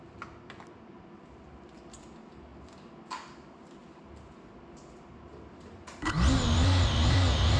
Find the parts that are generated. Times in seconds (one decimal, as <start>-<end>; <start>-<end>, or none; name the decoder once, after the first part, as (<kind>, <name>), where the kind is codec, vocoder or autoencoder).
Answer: none